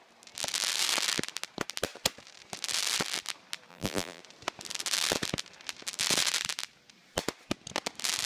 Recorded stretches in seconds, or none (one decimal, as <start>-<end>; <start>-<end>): 0.0-3.7; 4.2-8.3